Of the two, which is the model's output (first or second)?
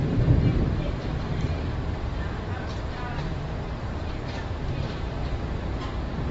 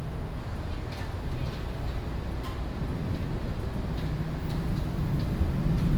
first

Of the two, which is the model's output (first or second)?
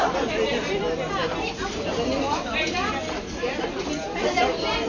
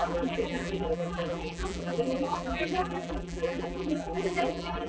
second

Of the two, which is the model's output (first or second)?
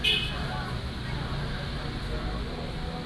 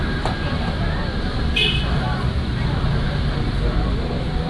second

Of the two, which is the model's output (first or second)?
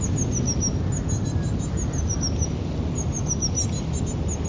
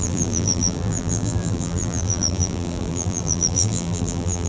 second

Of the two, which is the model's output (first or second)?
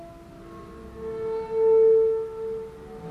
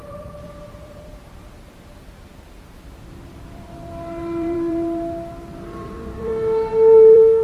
second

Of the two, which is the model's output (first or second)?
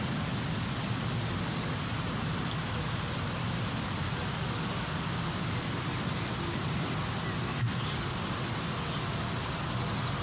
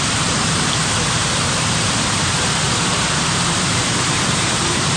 second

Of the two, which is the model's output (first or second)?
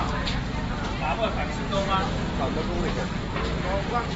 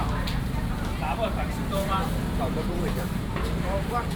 second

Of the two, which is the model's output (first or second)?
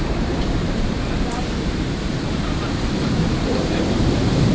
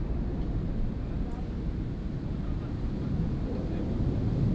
first